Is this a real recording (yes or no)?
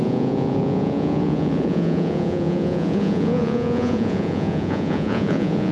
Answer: no